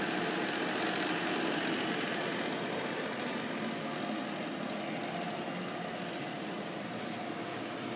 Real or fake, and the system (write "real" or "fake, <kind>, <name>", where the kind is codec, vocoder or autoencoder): real